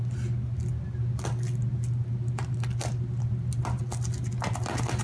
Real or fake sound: real